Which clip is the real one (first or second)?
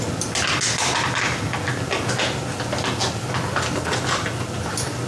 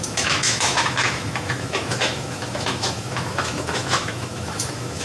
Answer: first